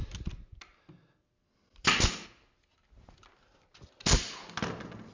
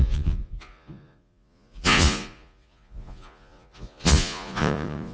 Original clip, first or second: first